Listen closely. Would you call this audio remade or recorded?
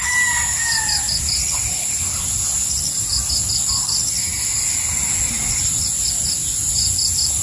recorded